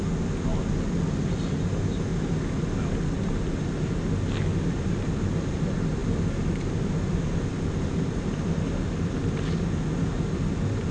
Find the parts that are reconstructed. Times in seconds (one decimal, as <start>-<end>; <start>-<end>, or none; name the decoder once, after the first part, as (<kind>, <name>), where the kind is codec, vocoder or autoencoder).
none